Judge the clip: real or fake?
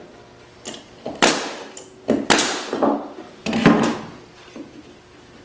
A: real